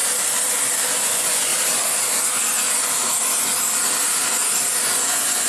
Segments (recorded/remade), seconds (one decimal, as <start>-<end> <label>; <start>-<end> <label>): 0.0-1.0 recorded; 1.0-1.5 remade; 1.5-4.8 recorded; 4.8-5.5 remade